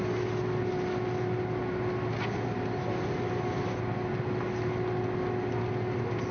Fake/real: real